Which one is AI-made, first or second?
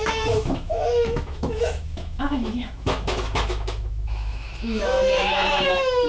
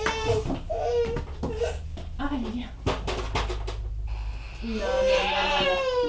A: first